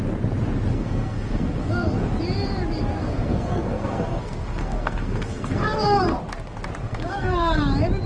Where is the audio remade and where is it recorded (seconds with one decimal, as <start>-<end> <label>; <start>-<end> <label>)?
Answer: 0.0-0.7 recorded; 0.7-2.1 remade; 2.1-3.0 recorded; 3.0-6.2 remade; 6.2-6.8 recorded; 6.8-7.6 remade; 7.6-8.1 recorded